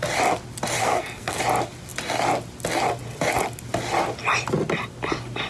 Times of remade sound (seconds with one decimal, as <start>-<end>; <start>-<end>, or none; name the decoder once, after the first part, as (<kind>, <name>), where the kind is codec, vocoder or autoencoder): 0.8-1.4 (codec, SNAC)